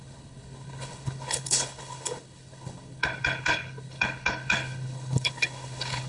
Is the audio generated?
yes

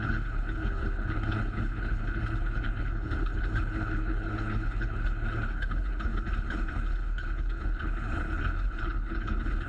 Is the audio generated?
yes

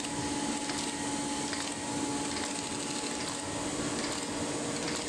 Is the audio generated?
no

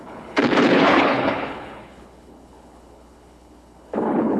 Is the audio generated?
yes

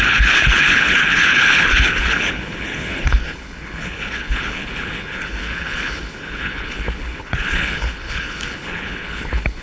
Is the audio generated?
yes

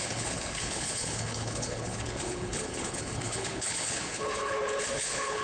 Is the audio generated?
yes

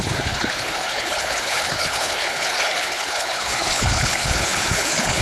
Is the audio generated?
yes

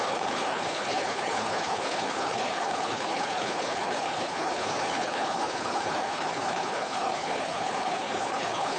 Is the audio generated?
yes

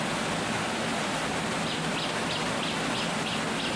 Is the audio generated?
no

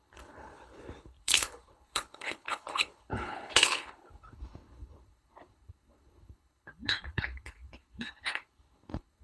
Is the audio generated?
yes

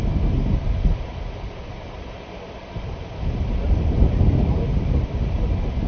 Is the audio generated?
no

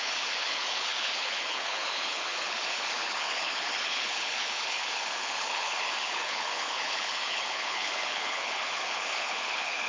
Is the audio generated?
yes